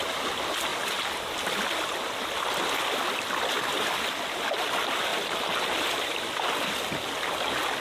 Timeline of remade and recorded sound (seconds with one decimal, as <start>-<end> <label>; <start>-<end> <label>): 0.0-7.8 recorded